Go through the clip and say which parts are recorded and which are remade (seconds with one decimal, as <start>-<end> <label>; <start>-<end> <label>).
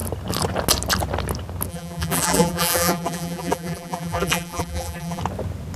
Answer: 0.0-1.7 recorded; 1.7-5.2 remade; 5.2-5.8 recorded